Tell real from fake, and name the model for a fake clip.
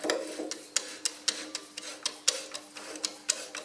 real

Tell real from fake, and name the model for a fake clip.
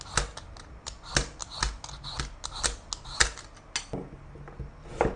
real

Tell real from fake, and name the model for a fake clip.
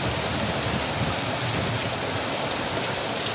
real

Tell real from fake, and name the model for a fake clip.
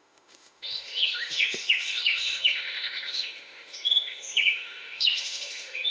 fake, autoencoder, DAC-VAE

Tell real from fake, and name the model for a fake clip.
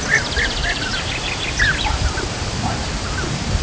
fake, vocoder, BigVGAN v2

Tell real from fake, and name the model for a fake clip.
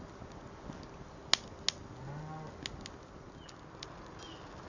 real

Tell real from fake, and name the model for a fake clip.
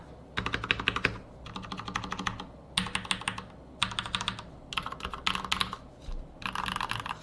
real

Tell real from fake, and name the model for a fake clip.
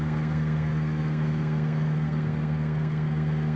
fake, codec, SNAC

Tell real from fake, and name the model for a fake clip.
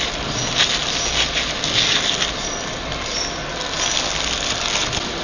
real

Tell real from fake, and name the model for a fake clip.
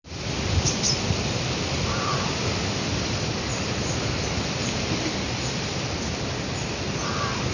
real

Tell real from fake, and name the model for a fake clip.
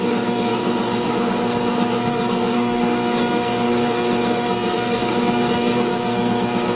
fake, codec, SNAC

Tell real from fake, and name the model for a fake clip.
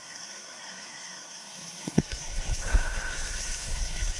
fake, codec, SNAC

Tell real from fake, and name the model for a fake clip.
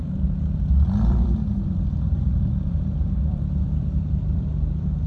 fake, vocoder, BigVGAN v2